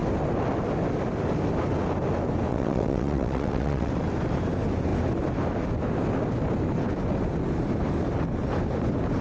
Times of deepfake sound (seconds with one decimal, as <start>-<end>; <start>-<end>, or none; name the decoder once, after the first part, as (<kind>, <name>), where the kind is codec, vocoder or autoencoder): 2.5-3.9 (vocoder, WaveNeXt)

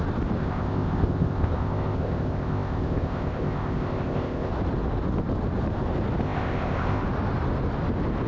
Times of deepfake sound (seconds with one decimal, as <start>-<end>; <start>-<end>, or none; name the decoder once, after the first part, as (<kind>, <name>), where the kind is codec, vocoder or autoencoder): 0.4-4.5 (codec, ZipCodec); 6.2-7.0

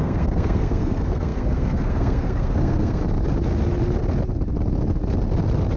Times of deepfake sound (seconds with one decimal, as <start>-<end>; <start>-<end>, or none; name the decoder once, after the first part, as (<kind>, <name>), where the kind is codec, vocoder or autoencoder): 0.0-3.0 (codec, SNAC)

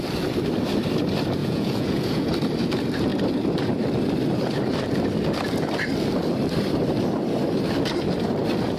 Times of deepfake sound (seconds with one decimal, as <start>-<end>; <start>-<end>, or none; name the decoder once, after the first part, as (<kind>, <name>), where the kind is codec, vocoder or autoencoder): 1.4-2.3 (vocoder, Vocos)

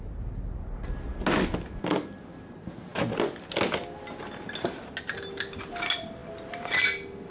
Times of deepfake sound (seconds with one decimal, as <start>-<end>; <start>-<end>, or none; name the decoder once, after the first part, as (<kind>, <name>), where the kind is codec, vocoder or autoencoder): none